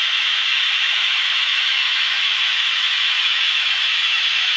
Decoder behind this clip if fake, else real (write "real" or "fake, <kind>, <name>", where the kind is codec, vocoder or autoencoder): fake, autoencoder, DAC-VAE